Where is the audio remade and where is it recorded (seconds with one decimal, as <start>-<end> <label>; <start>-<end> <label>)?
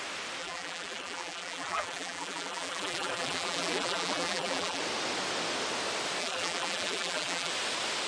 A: 0.0-0.4 recorded; 0.4-4.8 remade; 4.8-6.2 recorded; 6.2-7.5 remade; 7.5-8.1 recorded